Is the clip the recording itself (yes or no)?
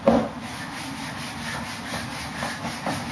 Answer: yes